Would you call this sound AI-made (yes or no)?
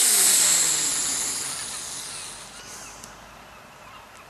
no